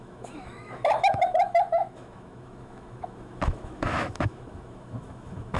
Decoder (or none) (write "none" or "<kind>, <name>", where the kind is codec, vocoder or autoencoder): autoencoder, DAC-VAE